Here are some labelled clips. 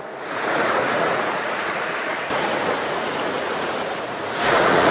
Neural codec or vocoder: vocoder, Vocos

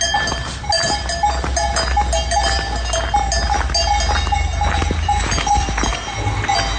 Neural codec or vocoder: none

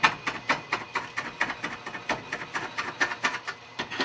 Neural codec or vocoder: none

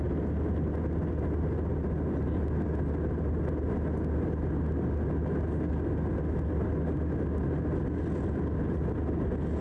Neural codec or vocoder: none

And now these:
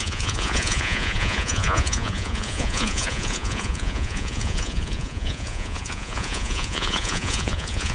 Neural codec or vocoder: vocoder, Vocos